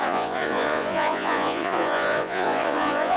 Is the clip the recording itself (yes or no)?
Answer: no